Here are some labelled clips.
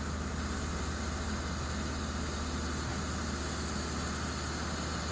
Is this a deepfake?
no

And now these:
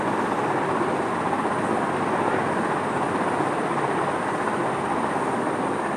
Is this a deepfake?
no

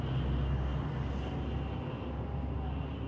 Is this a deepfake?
no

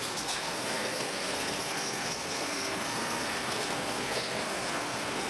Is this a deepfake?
yes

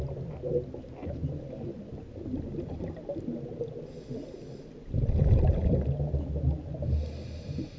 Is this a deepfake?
no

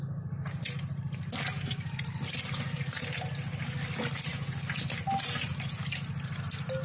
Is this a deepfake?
no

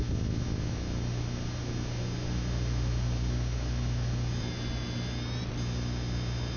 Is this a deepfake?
no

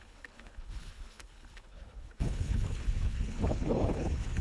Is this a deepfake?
yes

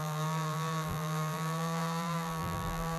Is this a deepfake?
yes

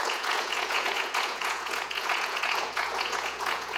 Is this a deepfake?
yes